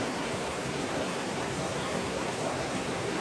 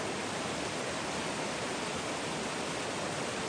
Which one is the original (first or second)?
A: second